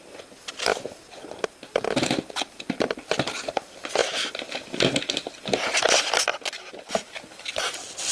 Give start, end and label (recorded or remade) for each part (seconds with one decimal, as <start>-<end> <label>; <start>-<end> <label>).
0.0-8.1 recorded